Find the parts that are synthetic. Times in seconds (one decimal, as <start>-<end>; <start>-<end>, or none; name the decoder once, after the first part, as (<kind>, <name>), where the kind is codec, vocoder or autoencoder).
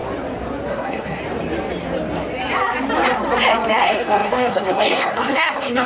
0.7-1.2 (codec, SNAC); 3.7-5.9